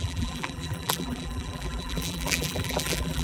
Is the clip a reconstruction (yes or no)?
yes